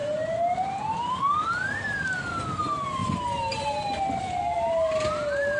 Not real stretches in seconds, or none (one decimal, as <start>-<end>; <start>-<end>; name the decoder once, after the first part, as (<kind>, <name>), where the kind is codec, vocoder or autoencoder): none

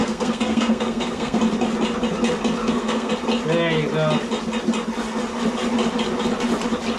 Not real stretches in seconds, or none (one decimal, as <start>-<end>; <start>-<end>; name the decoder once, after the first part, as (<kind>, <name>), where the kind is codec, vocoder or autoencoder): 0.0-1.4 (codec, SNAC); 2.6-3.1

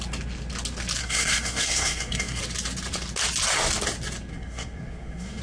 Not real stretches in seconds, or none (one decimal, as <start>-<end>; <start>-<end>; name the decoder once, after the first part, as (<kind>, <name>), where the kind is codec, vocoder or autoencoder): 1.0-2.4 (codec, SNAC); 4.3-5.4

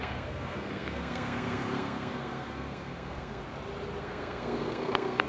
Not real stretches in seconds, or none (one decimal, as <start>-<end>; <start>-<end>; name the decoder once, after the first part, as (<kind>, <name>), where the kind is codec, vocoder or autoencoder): 0.0-3.4 (codec, SNAC); 4.0-5.3

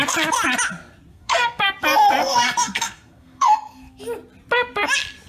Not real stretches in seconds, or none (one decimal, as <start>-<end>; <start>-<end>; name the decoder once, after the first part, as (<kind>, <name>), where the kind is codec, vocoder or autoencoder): 1.1-1.7 (codec, SNAC); 2.2-4.0

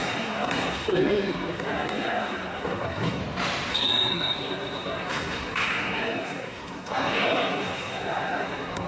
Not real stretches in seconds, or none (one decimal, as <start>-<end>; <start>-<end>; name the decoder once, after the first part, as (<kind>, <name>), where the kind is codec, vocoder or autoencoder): 0.0-3.2 (codec, SNAC); 3.7-8.9

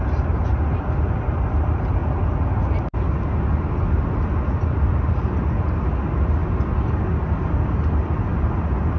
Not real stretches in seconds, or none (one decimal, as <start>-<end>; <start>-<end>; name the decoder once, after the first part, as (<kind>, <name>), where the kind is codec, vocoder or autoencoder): none

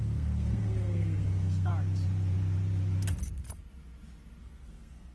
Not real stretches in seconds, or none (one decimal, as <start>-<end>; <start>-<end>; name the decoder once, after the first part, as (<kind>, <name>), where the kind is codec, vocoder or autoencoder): 0.0-1.7 (codec, SNAC); 4.4-5.1